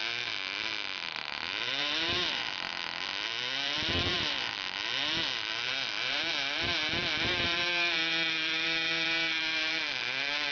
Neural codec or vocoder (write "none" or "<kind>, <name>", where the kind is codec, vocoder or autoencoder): vocoder, BigVGAN v2